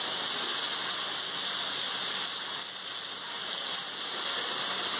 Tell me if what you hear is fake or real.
real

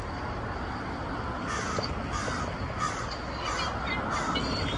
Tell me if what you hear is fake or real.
real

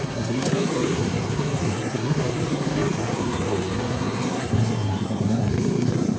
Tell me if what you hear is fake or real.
fake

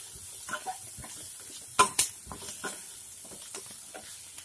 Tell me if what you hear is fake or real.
real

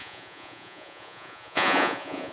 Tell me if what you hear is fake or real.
fake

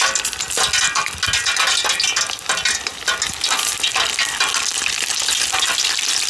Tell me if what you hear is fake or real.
real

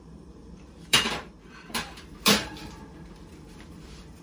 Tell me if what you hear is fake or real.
fake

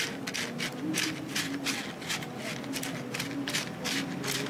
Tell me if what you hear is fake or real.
real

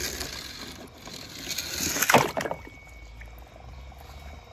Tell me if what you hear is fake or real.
real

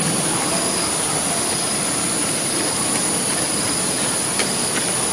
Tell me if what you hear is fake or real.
real